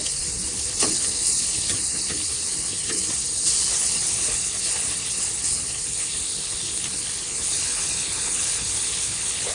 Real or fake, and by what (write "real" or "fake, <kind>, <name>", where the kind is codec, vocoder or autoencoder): fake, codec, HILCodec